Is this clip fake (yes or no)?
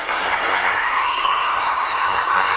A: yes